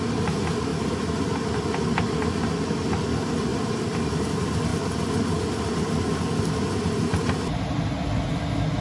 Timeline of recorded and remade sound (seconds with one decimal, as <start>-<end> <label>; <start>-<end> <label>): 0.0-8.8 recorded